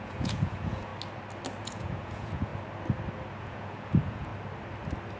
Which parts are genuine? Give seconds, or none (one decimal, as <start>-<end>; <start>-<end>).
0.9-1.6; 2.5-3.4; 4.3-5.2